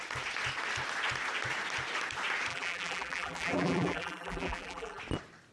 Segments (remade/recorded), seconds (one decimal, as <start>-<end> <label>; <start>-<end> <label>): 0.0-2.5 recorded; 2.5-5.0 remade; 5.0-5.5 recorded